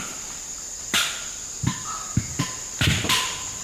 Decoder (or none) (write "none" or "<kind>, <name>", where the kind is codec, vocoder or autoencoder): none